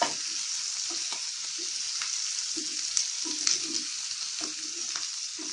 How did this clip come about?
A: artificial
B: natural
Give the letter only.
B